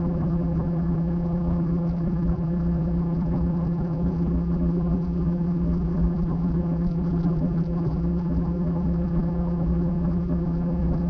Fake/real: fake